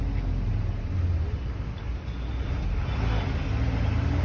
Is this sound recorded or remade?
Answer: recorded